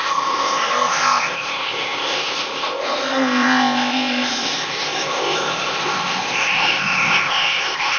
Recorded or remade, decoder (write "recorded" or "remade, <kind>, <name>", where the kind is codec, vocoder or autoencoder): remade, codec, ZipCodec